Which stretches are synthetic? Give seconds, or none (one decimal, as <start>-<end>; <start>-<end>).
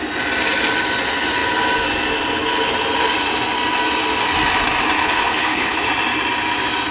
5.0-5.9